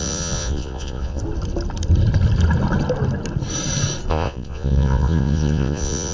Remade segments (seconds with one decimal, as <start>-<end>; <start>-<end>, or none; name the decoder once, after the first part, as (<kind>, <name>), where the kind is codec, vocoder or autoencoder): 0.0-1.2 (vocoder, Vocos); 4.1-6.1